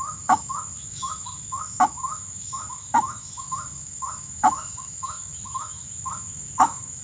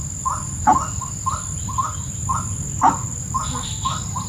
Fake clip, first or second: first